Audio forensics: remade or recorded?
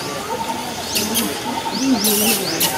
recorded